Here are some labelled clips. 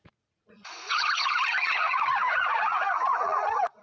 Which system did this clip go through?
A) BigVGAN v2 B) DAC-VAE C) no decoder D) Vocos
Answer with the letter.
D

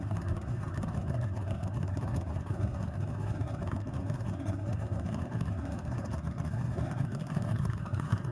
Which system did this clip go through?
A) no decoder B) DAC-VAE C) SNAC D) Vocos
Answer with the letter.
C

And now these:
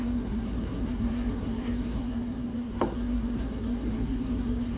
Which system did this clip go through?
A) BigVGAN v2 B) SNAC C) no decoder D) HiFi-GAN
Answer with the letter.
B